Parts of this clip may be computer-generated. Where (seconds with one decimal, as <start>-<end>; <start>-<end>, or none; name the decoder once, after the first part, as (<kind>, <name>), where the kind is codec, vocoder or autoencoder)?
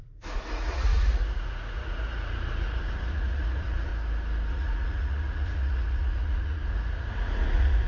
0.0-3.9 (vocoder, Vocos); 4.5-7.9